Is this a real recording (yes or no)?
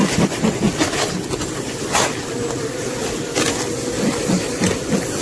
yes